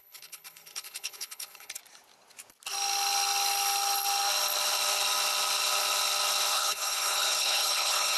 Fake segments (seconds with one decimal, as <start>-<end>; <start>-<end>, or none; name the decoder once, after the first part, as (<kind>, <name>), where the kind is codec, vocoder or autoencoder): 0.0-1.8 (codec, HILCodec); 6.5-8.2